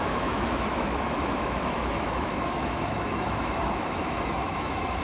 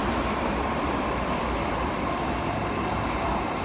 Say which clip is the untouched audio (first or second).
second